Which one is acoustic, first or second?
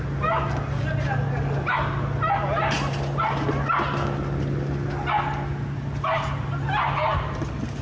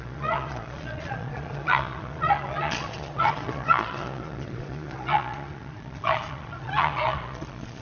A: first